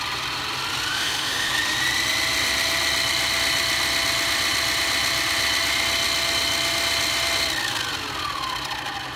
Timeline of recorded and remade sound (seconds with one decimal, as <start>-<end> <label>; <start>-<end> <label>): 0.0-0.9 recorded; 0.9-1.5 remade; 1.5-9.2 recorded

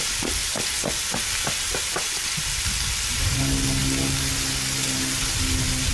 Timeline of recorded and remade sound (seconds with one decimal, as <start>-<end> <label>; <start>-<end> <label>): 0.0-5.9 recorded

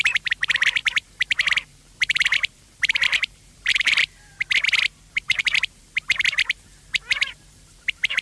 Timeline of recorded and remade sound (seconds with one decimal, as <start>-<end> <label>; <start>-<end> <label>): 0.0-4.3 remade; 4.3-5.1 recorded; 5.1-8.2 remade

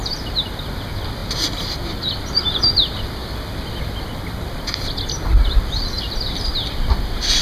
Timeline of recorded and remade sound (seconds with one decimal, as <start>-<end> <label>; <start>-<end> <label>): 0.0-0.6 remade; 0.6-1.2 recorded; 1.2-2.6 remade; 2.6-7.4 recorded

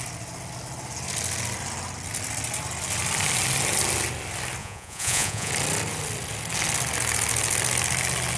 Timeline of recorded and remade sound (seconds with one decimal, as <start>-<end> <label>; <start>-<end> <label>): 0.0-4.6 recorded; 4.6-5.5 remade; 5.5-8.4 recorded

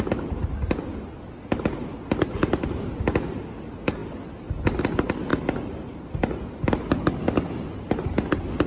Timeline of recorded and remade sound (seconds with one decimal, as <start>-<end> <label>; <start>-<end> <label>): 0.0-8.7 recorded

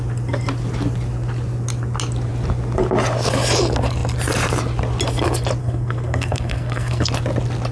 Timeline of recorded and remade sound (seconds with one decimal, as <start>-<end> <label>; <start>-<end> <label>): 0.0-5.6 recorded; 5.6-7.1 remade; 7.1-7.7 recorded

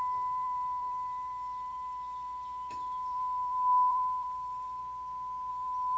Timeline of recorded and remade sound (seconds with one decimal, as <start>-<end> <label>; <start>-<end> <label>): 0.0-4.8 remade; 4.8-5.5 recorded; 5.5-6.0 remade